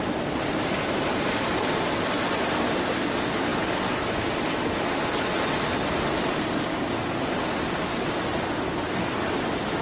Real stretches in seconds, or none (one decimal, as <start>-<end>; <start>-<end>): 0.0-9.8